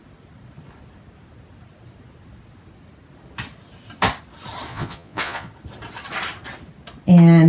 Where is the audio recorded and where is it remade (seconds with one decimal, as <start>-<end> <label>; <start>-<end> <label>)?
0.0-4.7 recorded; 4.7-5.5 remade; 5.5-7.5 recorded